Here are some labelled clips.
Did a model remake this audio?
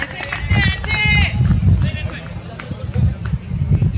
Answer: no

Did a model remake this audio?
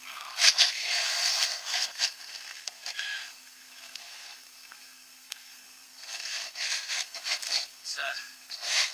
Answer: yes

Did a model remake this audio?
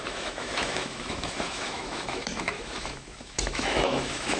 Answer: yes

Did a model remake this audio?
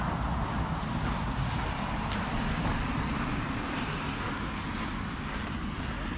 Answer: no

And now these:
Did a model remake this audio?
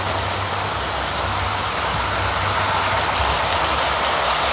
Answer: no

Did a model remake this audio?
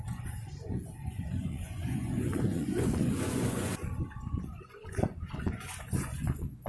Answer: yes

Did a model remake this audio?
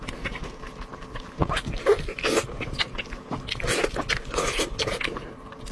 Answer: no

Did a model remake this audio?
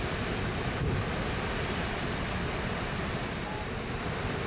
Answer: no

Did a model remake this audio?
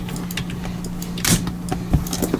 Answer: no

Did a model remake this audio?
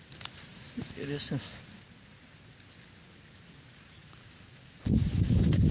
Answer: no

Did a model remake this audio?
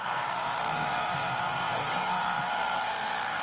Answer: yes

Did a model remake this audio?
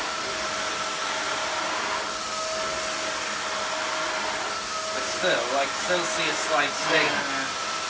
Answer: no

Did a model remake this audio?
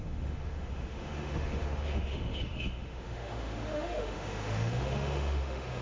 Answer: yes